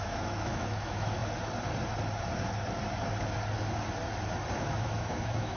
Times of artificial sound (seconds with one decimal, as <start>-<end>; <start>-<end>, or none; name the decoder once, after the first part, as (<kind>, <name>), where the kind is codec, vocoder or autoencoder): 0.0-1.2 (autoencoder, DAC-VAE); 4.6-5.6